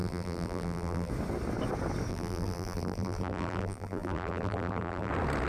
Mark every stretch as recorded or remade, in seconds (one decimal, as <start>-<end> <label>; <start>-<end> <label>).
0.0-1.1 remade; 1.1-2.1 recorded; 2.1-5.1 remade; 5.1-5.5 recorded